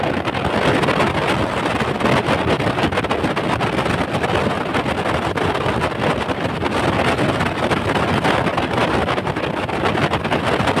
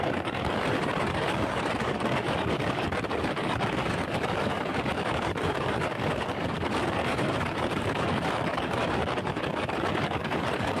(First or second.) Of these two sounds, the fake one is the second